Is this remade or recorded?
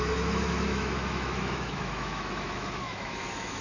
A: remade